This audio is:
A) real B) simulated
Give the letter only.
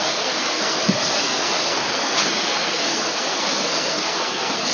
B